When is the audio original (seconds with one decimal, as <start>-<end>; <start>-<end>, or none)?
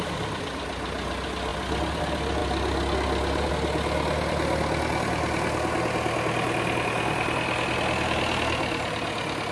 0.0-9.5